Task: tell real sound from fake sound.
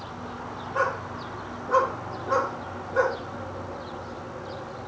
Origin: real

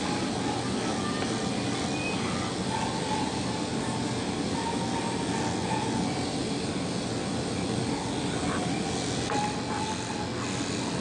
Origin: real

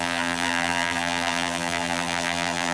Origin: fake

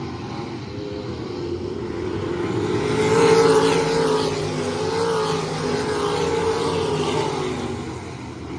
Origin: real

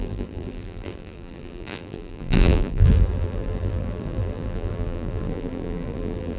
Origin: fake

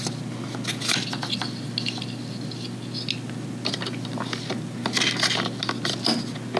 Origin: real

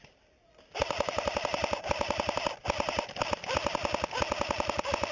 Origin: real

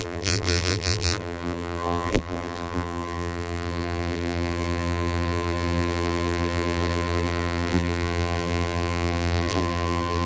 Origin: fake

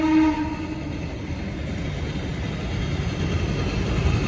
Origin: real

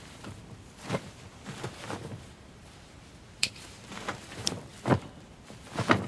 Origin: fake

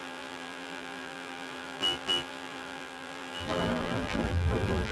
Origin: fake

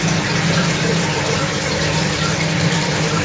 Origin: fake